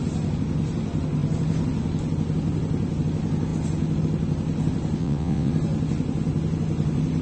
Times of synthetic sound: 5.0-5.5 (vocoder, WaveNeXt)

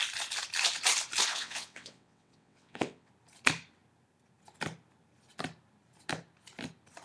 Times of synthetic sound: 1.3-3.1 (vocoder, WaveNeXt)